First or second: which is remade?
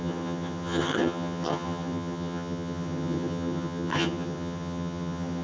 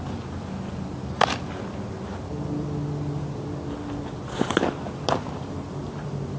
first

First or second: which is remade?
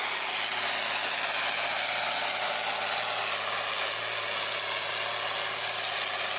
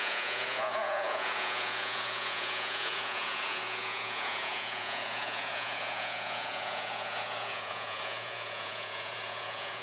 second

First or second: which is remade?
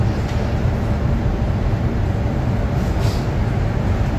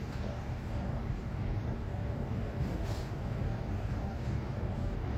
second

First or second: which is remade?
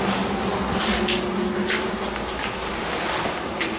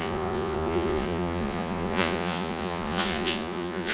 second